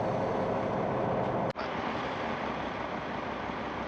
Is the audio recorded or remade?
recorded